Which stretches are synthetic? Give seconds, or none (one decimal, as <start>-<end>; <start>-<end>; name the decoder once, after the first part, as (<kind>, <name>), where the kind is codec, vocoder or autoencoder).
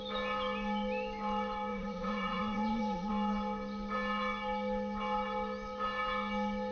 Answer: 1.7-3.1 (vocoder, Vocos)